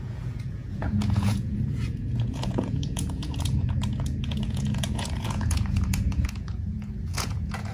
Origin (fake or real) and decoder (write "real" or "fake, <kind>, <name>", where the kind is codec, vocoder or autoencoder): fake, vocoder, Vocos